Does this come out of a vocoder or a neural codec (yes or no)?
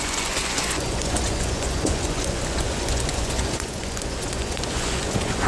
yes